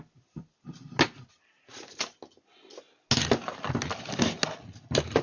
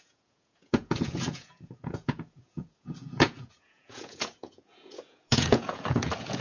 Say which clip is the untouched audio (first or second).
first